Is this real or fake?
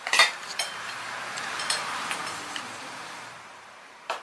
fake